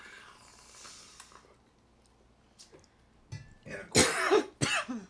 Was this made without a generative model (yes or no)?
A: yes